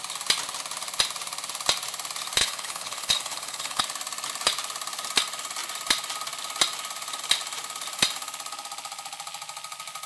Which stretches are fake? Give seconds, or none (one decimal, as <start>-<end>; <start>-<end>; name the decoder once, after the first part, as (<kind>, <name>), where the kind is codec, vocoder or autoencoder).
2.4-3.8 (codec, HILCodec)